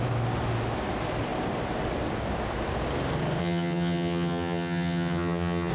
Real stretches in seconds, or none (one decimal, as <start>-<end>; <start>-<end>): 0.0-3.4